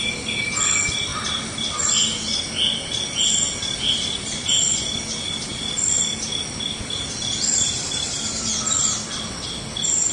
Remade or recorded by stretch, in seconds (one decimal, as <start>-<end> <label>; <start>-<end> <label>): 0.0-10.1 recorded